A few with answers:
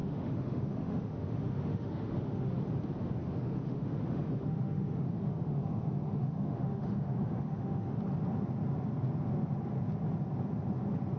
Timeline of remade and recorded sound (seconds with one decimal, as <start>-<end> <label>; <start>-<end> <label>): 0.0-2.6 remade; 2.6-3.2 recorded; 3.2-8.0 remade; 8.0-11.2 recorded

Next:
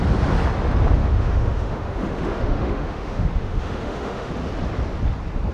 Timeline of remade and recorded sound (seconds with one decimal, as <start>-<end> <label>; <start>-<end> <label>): 0.0-1.0 recorded; 1.0-4.3 remade; 4.3-5.5 recorded

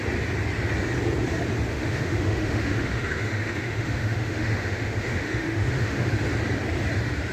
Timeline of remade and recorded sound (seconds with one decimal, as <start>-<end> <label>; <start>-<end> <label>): 0.0-1.7 recorded; 1.7-6.1 remade; 6.1-7.3 recorded

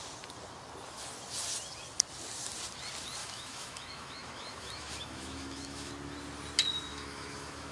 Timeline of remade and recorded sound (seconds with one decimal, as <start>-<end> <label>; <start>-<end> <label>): 0.0-3.2 recorded; 3.2-5.9 remade; 5.9-6.9 recorded; 6.9-7.7 remade

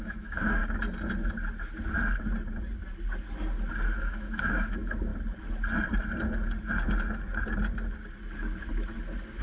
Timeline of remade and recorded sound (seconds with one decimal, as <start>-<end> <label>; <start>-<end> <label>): 0.0-0.6 remade; 0.6-4.0 recorded; 4.0-5.1 remade; 5.1-9.4 recorded

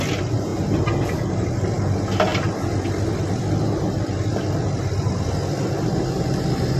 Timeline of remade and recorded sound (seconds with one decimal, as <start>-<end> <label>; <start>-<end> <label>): 0.0-6.8 recorded